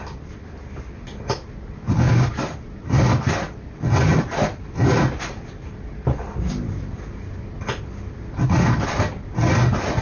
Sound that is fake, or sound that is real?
real